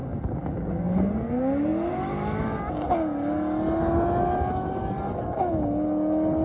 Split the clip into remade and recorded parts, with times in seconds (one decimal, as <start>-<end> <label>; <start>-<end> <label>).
0.0-6.4 recorded